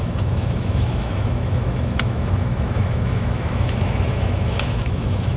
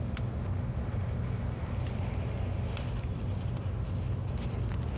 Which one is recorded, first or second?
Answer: second